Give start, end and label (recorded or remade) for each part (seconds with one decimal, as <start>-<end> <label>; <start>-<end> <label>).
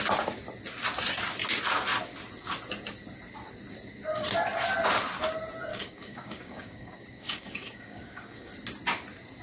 0.0-5.7 recorded; 5.7-8.5 remade; 8.5-9.4 recorded